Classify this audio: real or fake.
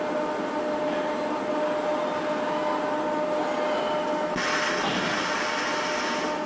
real